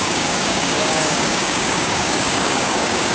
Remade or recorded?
remade